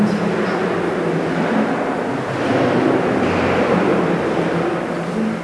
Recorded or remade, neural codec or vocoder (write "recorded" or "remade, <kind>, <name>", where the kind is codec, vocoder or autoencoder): recorded